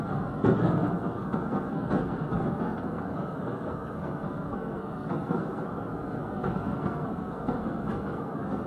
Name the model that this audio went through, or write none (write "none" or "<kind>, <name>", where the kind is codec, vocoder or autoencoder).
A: codec, SNAC